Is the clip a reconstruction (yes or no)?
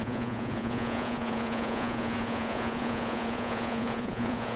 yes